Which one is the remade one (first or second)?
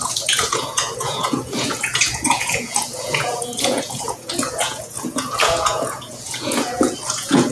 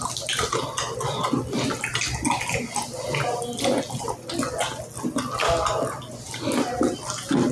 first